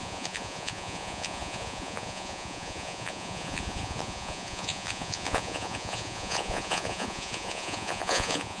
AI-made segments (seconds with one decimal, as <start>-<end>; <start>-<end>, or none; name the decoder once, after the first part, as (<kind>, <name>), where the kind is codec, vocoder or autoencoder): 0.0-8.6 (vocoder, Vocos)